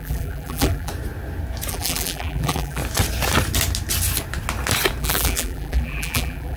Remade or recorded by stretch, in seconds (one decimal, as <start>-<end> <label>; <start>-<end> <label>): 0.0-0.9 remade; 0.9-1.7 recorded; 1.7-2.8 remade; 2.8-5.0 recorded; 5.0-6.6 remade